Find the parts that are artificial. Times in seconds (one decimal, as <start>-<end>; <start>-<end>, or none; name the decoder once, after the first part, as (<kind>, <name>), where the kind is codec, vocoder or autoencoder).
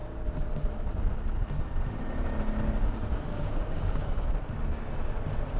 3.3-4.1 (codec, DAC)